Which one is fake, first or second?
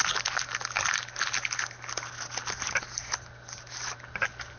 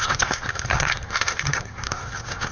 second